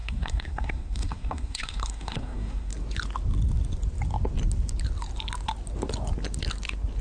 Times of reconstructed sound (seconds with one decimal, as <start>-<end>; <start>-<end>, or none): 0.0-2.7